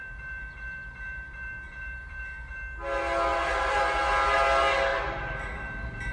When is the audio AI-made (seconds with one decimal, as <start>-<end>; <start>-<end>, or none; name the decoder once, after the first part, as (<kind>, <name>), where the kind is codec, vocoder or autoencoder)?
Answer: 0.0-2.5 (vocoder, BigVGAN v2); 3.3-3.8; 4.9-6.1